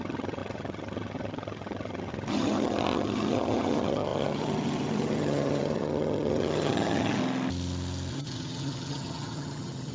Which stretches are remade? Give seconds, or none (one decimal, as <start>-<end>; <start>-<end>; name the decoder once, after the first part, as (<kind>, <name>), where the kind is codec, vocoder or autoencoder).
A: 0.0-7.2 (vocoder, HiFi-GAN); 8.1-9.9